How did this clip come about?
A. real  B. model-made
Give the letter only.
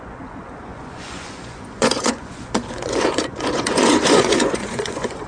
B